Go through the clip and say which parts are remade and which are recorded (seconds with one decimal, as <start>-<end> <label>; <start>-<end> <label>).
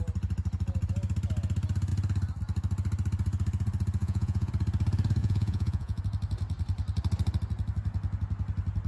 0.0-4.0 recorded; 4.0-4.5 remade; 4.5-5.2 recorded; 5.2-6.0 remade; 6.0-8.9 recorded